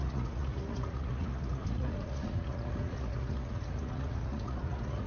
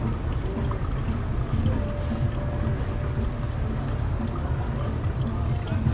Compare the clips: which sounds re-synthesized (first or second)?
first